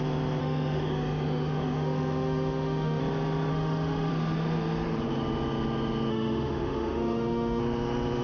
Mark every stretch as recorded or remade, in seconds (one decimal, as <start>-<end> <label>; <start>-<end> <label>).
0.0-0.4 recorded; 0.4-3.0 remade; 3.0-3.5 recorded; 3.5-4.1 remade; 4.1-6.1 recorded; 6.1-7.6 remade; 7.6-8.2 recorded